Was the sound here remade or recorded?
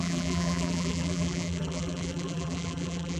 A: remade